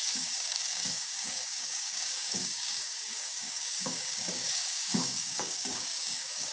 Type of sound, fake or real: fake